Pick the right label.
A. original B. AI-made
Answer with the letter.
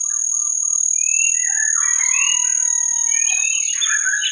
A